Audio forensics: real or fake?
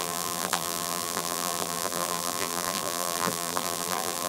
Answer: fake